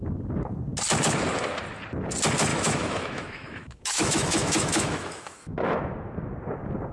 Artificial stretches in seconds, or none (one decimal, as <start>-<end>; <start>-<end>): 2.5-5.8